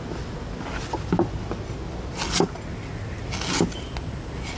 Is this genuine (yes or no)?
yes